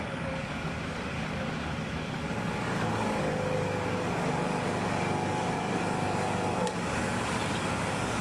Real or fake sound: fake